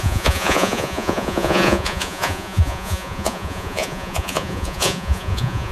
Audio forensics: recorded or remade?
remade